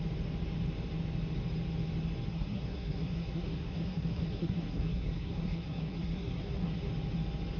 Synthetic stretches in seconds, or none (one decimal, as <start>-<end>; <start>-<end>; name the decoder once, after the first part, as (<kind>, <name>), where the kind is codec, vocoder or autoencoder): 2.3-6.9 (codec, SNAC)